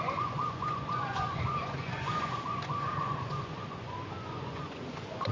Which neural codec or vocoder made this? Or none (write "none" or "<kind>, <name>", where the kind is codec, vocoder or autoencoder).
vocoder, Vocos